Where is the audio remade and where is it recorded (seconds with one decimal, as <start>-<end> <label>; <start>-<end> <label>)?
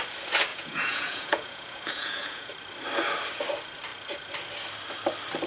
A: 0.0-0.5 recorded; 0.5-2.5 remade; 2.5-5.5 recorded